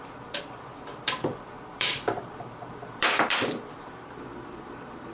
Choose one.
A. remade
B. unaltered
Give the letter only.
A